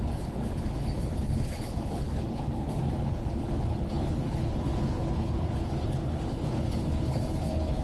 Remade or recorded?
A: remade